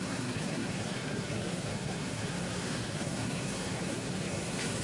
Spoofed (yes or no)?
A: yes